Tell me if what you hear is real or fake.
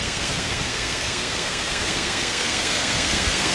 fake